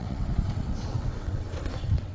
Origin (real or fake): fake